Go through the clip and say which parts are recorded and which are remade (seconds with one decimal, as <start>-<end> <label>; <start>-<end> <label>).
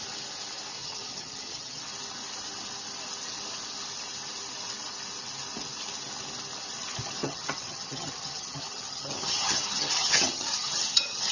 0.0-0.8 recorded; 0.8-1.8 remade; 1.8-7.2 recorded; 7.2-11.3 remade